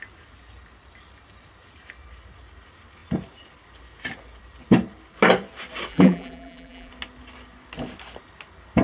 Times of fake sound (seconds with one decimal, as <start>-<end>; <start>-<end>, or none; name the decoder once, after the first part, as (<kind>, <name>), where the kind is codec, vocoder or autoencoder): 5.9-6.9 (vocoder, BigVGAN v2)